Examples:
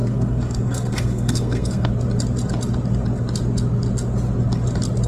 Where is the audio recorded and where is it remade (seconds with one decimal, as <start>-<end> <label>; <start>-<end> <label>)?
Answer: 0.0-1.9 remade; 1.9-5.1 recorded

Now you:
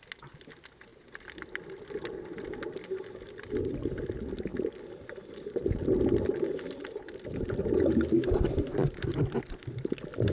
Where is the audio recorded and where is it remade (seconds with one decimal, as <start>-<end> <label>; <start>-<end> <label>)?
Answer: 0.0-10.3 recorded

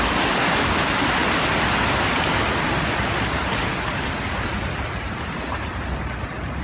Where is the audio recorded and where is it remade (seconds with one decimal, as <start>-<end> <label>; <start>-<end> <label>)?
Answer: 0.0-6.6 recorded

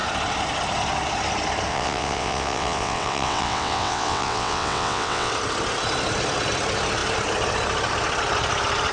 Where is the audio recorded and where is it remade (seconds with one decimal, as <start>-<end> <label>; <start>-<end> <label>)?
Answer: 0.0-1.7 recorded; 1.7-5.3 remade; 5.3-8.9 recorded